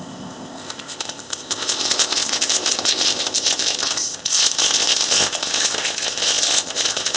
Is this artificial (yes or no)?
yes